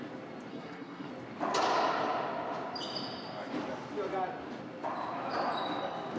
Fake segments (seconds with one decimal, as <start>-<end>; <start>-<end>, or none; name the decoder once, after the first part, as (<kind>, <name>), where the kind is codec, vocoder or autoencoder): 0.5-1.1 (codec, SNAC)